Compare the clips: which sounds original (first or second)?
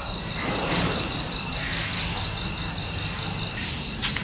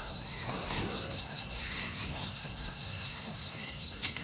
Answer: first